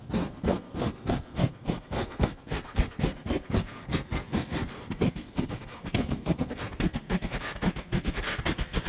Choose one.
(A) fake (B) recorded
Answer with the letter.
A